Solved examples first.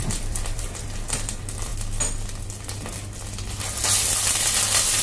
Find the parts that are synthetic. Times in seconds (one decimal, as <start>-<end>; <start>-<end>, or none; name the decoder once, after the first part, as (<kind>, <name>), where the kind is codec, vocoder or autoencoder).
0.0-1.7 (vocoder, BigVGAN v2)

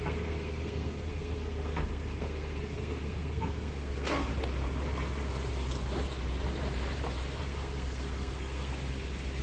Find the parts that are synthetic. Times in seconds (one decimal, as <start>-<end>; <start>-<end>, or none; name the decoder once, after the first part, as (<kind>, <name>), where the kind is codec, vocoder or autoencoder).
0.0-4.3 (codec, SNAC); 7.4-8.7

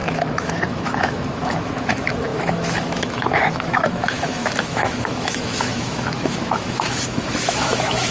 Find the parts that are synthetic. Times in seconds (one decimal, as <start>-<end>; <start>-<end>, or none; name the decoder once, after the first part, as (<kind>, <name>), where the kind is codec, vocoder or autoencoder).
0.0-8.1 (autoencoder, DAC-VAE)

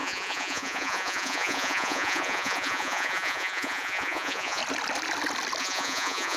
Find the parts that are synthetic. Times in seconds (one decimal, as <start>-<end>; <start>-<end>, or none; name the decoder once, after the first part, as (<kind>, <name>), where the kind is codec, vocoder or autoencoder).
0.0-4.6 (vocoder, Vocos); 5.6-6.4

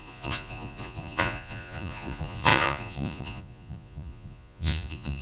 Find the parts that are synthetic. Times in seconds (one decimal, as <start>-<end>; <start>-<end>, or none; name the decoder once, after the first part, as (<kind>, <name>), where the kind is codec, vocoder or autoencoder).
0.0-5.2 (vocoder, Vocos)

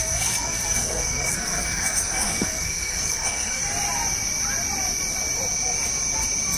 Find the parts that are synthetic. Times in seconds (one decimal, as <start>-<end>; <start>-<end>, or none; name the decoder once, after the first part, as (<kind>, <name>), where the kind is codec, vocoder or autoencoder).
0.0-3.6 (codec, SNAC)